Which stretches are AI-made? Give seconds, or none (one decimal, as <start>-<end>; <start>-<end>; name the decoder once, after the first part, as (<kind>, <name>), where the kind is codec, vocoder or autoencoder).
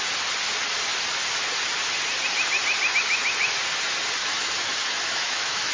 4.2-5.7 (autoencoder, DAC-VAE)